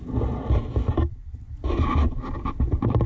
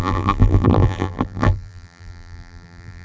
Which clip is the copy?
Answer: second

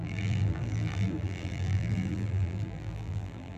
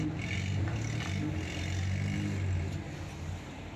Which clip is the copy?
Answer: first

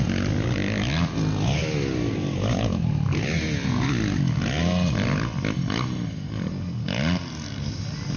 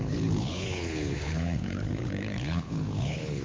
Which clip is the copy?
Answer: second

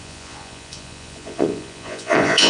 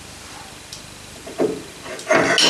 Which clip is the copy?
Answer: first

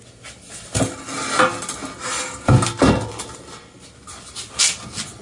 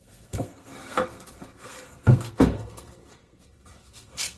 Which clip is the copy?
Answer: second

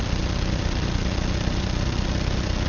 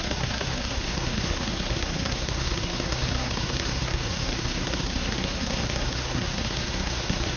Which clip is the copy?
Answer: second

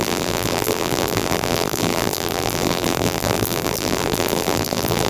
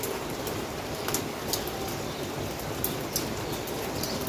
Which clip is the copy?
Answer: first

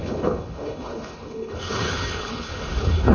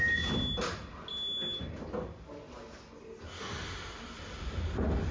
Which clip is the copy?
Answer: first